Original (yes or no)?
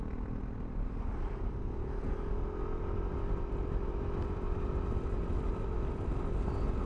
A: yes